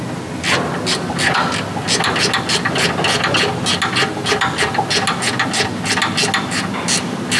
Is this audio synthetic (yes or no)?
no